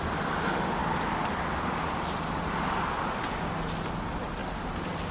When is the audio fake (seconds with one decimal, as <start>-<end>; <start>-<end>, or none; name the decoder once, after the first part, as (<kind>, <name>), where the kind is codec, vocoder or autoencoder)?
none